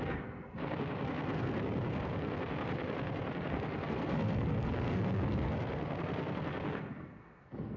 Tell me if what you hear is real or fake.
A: fake